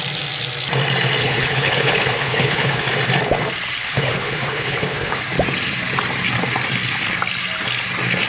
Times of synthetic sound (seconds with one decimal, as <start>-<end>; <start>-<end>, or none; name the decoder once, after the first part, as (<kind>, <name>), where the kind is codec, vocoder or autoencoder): 1.2-2.9 (codec, HILCodec); 3.8-5.2